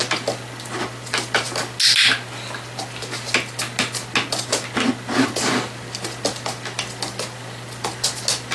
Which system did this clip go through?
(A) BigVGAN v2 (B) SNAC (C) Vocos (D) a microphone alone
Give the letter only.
D